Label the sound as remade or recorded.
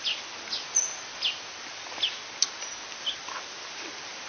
recorded